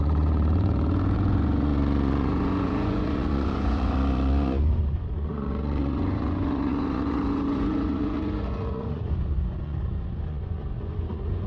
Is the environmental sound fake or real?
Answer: fake